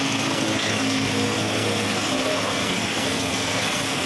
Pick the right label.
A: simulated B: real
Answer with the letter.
A